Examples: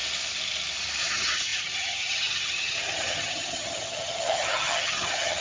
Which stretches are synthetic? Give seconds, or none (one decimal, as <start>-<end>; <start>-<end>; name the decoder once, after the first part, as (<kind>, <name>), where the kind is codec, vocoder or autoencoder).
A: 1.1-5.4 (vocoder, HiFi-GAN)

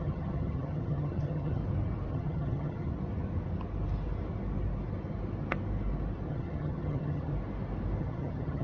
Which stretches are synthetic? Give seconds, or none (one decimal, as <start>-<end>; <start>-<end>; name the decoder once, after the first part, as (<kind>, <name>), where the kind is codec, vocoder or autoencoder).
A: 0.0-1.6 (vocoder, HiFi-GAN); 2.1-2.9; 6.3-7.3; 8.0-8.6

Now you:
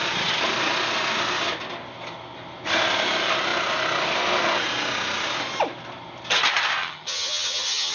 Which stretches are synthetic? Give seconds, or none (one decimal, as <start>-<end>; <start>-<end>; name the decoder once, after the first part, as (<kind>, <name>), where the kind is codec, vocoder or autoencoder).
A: 6.8-7.9 (vocoder, HiFi-GAN)